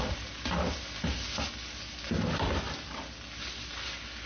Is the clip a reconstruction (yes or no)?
no